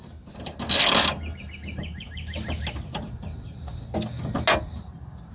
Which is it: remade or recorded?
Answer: recorded